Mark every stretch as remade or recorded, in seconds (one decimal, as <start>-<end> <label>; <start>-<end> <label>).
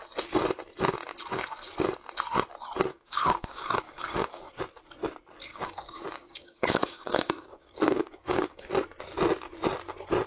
0.0-2.9 recorded; 2.9-4.6 remade; 4.6-5.5 recorded; 5.5-8.7 remade; 8.7-10.3 recorded